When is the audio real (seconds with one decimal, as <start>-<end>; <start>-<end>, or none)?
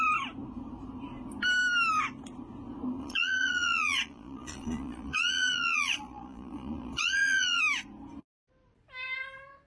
0.0-3.0; 7.6-9.7